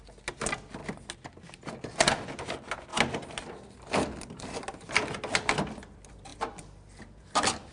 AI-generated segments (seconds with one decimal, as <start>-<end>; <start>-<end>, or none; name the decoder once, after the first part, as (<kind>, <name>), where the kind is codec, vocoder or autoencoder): none